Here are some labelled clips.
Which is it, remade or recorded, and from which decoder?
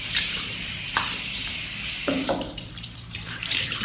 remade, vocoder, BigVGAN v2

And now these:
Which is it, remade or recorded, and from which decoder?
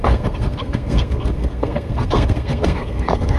remade, codec, SNAC